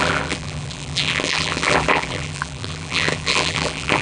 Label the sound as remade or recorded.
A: remade